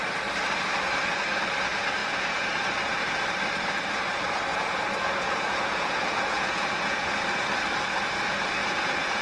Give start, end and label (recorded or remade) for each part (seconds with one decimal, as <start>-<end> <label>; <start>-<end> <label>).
0.0-2.0 recorded; 2.0-2.5 remade; 2.5-4.5 recorded; 4.5-7.1 remade; 7.1-8.6 recorded; 8.6-9.2 remade